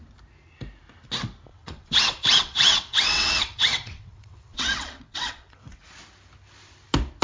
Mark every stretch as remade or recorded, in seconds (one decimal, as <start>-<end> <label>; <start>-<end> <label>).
0.0-1.5 recorded; 1.5-5.8 remade; 5.8-7.2 recorded